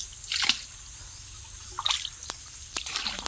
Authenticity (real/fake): real